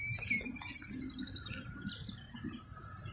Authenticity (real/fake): real